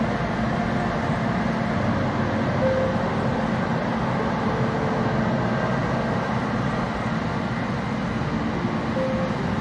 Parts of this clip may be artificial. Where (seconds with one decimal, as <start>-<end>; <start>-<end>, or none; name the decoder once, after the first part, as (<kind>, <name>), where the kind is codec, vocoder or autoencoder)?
none